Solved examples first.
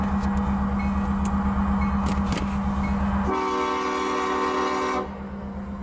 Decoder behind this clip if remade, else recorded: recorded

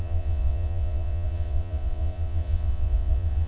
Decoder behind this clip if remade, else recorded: remade, vocoder, Vocos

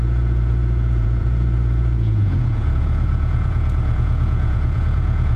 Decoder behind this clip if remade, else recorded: remade, vocoder, Vocos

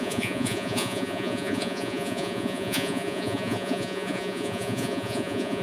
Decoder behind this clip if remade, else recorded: remade, vocoder, Vocos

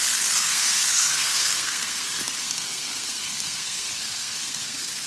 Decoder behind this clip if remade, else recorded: remade, codec, SNAC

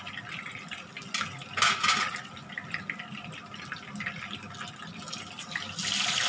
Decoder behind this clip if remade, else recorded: recorded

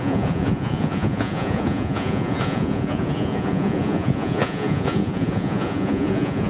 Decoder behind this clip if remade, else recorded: remade, vocoder, Vocos